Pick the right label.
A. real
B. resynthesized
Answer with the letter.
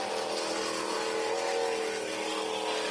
A